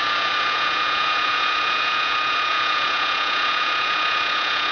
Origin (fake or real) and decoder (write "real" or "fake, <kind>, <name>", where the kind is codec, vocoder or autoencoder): fake, vocoder, Vocos